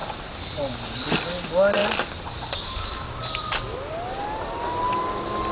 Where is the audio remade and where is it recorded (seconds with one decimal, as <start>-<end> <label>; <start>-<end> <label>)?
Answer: 0.0-5.5 recorded

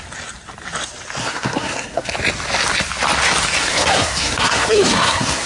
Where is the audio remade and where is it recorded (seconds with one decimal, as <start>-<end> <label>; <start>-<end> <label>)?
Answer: 0.0-1.2 recorded; 1.2-2.1 remade; 2.1-3.6 recorded; 3.6-5.5 remade

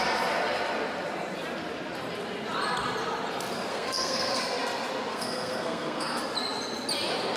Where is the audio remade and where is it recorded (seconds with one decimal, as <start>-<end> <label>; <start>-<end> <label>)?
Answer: 0.0-3.7 recorded; 3.7-4.4 remade; 4.4-5.1 recorded; 5.1-6.2 remade; 6.2-7.4 recorded

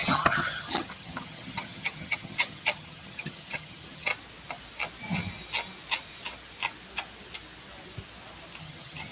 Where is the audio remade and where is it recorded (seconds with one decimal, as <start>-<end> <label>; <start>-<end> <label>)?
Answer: 0.0-4.1 remade; 4.1-8.6 recorded; 8.6-9.1 remade